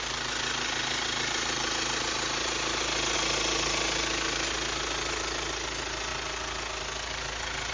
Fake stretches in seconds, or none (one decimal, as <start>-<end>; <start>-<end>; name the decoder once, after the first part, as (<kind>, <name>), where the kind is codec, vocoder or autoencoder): none